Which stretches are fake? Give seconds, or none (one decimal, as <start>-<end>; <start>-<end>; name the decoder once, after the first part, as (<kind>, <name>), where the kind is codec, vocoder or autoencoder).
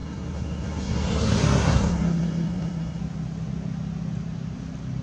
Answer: 0.0-3.0 (codec, SNAC)